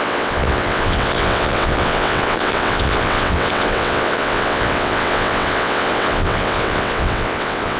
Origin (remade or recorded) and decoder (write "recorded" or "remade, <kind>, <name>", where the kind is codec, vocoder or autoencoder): remade, vocoder, WaveNeXt